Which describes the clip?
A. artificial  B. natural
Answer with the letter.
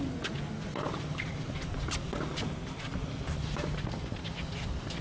B